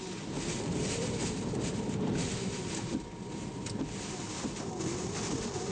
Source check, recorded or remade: recorded